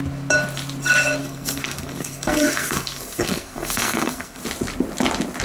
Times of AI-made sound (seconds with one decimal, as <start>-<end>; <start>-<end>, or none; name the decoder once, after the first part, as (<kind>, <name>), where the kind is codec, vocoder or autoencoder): 1.2-4.4 (codec, SNAC)

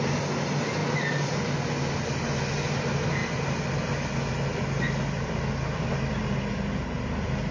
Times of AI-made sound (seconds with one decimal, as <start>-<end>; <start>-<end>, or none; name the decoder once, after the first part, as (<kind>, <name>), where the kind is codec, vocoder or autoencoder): none

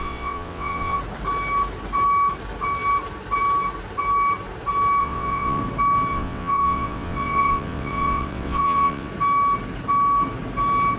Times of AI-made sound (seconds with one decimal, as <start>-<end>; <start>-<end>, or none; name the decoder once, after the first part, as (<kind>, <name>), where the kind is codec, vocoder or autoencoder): 0.0-1.0 (vocoder, WaveNeXt); 5.0-5.6; 6.1-9.1

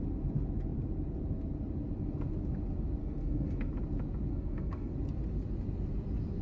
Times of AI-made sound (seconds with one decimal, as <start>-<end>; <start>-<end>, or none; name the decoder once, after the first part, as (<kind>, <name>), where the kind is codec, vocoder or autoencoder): 3.0-3.7 (codec, SNAC); 4.3-4.9

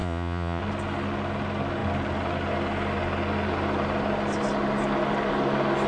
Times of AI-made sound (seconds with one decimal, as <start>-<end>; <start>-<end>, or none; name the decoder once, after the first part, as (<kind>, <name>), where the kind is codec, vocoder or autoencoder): 0.0-0.6 (vocoder, Vocos)

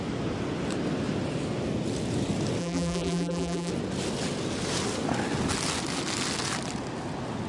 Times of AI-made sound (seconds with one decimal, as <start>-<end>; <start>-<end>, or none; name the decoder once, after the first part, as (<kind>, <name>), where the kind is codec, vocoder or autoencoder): 2.6-3.7 (vocoder, BigVGAN v2)

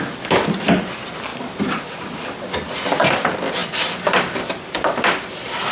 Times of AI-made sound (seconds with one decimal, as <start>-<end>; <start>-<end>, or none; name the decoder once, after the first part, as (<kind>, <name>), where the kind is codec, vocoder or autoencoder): 1.3-1.8 (vocoder, BigVGAN v2); 3.6-5.7

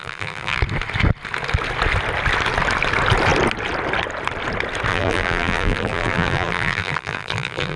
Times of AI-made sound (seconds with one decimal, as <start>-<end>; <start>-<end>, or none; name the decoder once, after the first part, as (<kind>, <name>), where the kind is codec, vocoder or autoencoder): 0.0-0.6 (vocoder, BigVGAN v2); 4.9-7.8